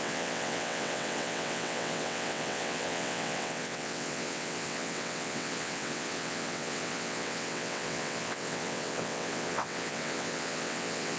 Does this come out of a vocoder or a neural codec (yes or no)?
yes